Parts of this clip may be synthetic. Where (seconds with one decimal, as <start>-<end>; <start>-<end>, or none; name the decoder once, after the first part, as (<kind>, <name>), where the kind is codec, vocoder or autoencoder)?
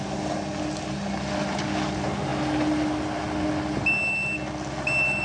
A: none